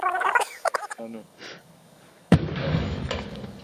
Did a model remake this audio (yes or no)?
yes